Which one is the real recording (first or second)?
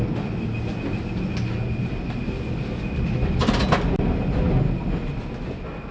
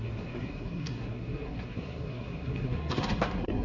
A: first